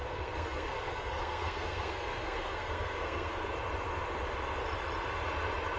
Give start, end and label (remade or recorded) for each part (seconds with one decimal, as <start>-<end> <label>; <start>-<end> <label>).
0.0-3.5 remade; 3.5-5.8 recorded